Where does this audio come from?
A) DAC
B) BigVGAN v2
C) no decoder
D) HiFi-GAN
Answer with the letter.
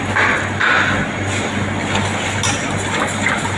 C